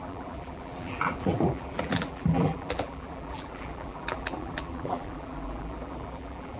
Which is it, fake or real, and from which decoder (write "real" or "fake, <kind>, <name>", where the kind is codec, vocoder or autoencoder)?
fake, vocoder, BigVGAN v2